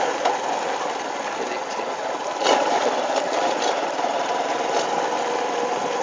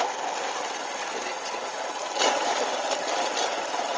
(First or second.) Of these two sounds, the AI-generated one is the second